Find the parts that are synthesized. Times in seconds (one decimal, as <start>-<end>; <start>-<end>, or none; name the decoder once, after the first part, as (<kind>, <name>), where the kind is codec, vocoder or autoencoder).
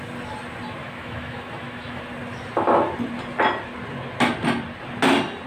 0.8-2.0 (autoencoder, DAC-VAE)